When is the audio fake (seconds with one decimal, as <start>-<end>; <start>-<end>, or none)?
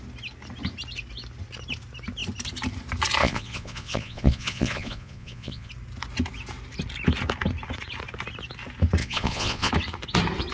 3.2-5.7; 9.0-9.7